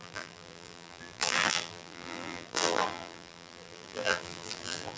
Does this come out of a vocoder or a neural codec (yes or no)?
yes